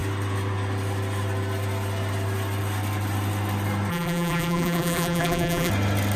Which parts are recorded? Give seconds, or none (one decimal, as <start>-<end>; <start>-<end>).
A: 0.0-3.9; 5.7-6.2